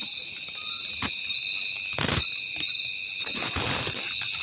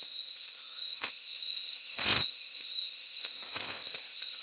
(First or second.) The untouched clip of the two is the first